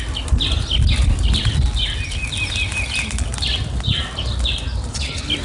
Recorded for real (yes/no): yes